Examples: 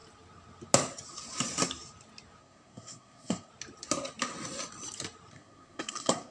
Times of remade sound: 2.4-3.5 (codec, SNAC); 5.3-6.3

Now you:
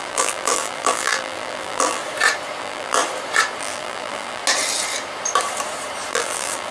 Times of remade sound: 0.0-2.0 (vocoder, BigVGAN v2); 2.6-3.0; 3.6-4.4; 6.1-6.7